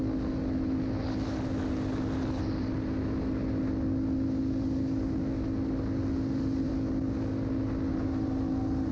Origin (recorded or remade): recorded